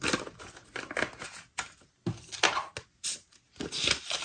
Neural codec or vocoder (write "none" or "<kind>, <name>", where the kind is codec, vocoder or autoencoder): none